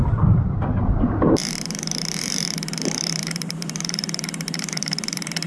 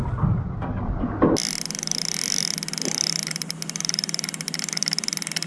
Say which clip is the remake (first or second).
first